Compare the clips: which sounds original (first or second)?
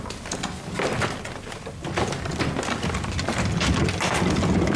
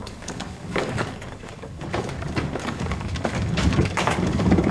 first